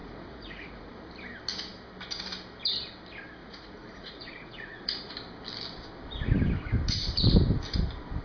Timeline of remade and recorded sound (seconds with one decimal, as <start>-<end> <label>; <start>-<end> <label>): 0.0-0.9 remade; 0.9-3.4 recorded; 3.4-5.1 remade; 5.1-8.2 recorded